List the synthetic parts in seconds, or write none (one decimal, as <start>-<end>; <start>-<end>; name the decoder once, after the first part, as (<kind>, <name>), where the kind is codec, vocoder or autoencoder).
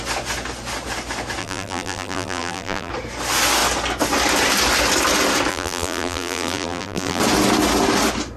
1.4-2.9 (vocoder, BigVGAN v2); 5.5-7.2